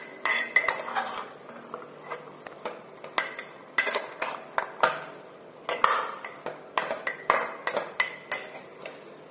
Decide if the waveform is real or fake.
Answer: real